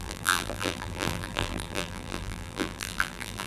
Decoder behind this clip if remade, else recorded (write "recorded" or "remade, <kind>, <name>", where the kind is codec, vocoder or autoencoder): remade, vocoder, BigVGAN v2